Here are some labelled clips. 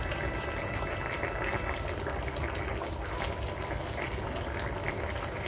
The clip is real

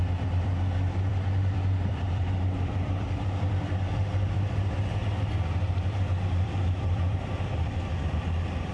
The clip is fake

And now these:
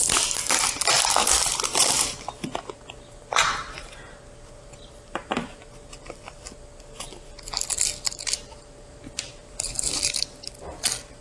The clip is fake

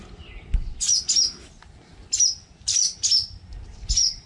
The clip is real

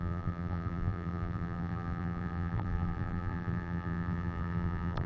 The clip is fake